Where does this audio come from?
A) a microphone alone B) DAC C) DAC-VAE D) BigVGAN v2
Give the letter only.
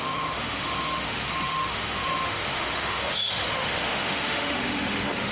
C